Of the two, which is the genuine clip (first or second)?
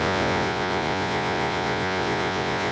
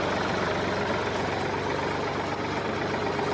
second